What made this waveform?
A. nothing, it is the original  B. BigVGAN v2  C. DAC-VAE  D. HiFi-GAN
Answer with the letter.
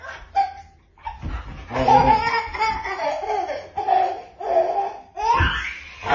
A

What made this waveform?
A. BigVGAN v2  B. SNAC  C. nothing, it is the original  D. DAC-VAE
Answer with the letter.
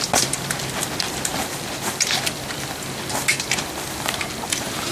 C